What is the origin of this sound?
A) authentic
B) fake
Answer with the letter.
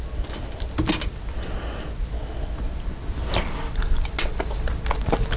A